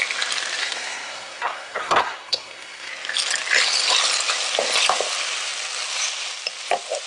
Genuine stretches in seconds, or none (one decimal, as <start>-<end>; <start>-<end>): 0.0-0.6; 2.9-7.1